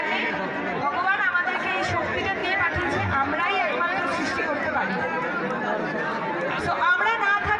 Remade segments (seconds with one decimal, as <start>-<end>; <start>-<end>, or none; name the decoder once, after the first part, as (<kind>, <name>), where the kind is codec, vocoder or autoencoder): none